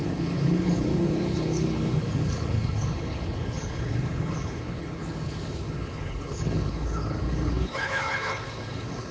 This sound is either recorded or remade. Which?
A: remade